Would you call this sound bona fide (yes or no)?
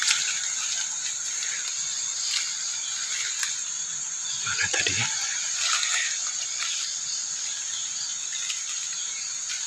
yes